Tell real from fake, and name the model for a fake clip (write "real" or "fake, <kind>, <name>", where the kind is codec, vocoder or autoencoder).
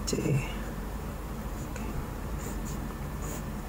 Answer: fake, vocoder, BigVGAN v2